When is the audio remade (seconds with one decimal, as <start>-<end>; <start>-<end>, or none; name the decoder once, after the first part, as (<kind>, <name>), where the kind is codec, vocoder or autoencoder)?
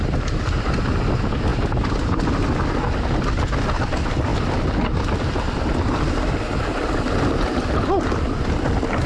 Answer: none